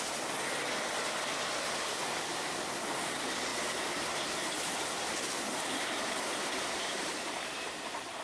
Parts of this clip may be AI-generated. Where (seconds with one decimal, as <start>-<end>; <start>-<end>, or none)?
3.5-8.2